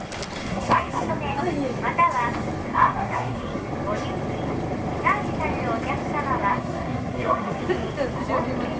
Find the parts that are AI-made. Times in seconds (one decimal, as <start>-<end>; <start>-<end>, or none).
0.4-1.1; 2.7-3.7; 6.5-7.6